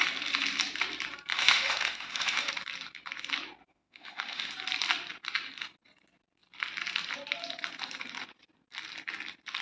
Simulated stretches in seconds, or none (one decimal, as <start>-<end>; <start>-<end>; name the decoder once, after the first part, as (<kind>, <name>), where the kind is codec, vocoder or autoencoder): 1.3-2.5 (autoencoder, DAC-VAE); 3.7-4.5